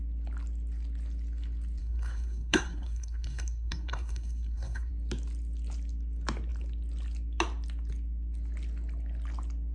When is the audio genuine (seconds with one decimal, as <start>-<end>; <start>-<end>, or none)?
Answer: 0.0-1.8; 4.9-9.7